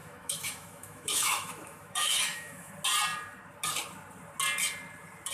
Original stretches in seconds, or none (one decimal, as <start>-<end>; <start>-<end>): 2.7-5.3